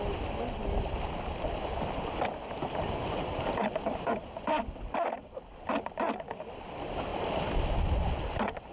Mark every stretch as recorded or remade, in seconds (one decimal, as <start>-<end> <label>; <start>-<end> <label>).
0.0-8.7 recorded